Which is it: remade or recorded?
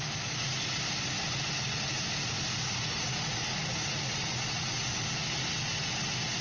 recorded